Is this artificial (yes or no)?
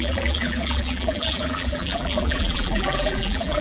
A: yes